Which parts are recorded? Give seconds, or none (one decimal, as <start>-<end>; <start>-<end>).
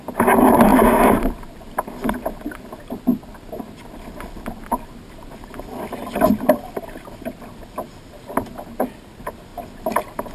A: 0.0-10.3